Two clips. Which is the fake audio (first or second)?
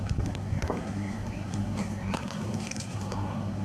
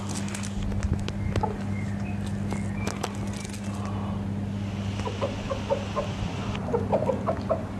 first